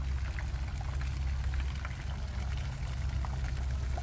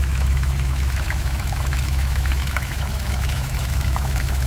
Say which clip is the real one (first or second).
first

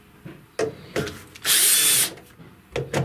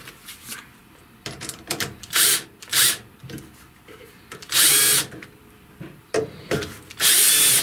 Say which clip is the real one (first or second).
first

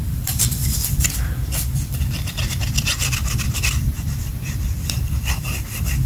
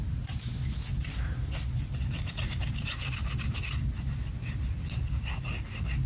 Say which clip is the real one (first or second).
second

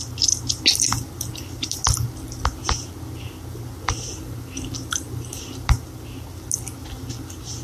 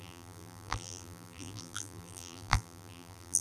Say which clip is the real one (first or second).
first